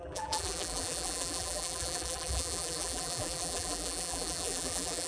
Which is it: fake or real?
fake